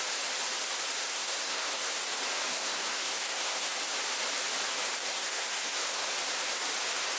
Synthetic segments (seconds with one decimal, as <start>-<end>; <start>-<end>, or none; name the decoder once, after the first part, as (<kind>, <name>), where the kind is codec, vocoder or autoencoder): 1.1-2.0 (codec, SNAC); 2.5-3.8; 5.0-6.1